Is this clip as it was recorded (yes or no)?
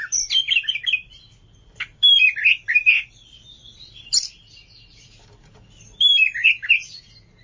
no